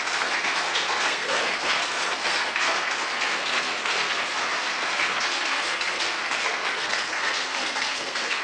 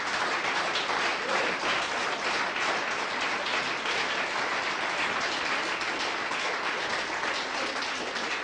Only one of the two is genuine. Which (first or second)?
second